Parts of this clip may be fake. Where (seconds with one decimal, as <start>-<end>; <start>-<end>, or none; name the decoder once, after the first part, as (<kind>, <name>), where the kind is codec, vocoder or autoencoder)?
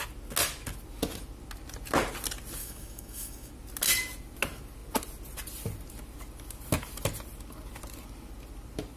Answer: 2.6-3.5 (codec, DAC)